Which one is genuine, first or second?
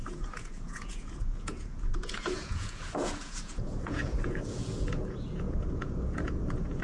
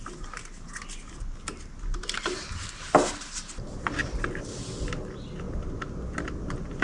second